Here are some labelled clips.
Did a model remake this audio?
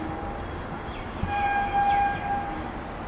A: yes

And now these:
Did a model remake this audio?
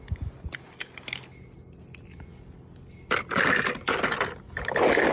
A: no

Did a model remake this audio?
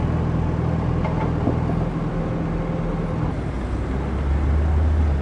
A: no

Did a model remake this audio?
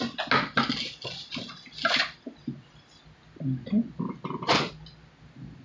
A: no